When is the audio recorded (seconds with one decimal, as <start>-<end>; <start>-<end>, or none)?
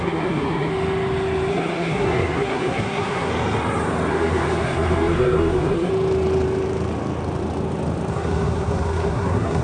0.7-1.5; 3.3-4.1; 5.9-8.1